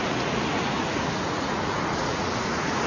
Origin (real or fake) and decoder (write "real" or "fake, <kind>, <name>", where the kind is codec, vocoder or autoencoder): fake, vocoder, Vocos